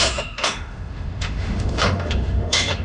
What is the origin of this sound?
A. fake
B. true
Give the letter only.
A